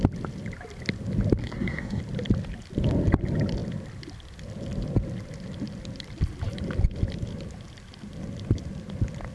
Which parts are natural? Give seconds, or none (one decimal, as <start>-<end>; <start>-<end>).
0.0-1.4; 2.0-9.3